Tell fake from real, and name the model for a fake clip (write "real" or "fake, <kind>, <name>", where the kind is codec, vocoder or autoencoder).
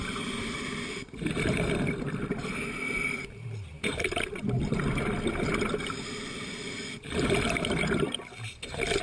real